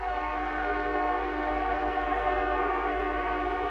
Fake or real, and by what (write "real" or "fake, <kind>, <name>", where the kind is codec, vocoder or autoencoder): fake, codec, SNAC